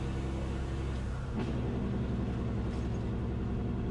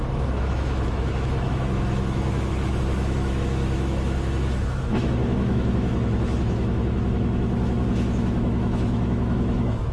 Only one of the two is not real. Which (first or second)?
second